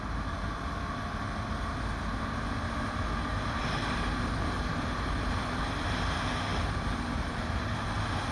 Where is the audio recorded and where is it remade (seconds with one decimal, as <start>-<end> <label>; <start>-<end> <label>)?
0.0-8.3 recorded